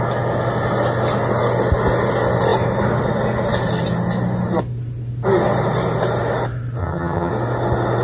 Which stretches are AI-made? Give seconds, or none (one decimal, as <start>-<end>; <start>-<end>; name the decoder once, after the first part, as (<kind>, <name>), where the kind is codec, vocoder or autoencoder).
6.8-7.3 (vocoder, HiFi-GAN)